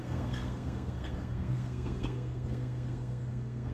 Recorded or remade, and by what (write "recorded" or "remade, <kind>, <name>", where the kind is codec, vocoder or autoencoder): remade, codec, SNAC